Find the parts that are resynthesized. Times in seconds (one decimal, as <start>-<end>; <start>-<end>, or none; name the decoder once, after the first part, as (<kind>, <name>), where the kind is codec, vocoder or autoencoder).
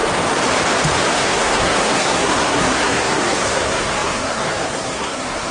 1.1-5.5 (codec, SNAC)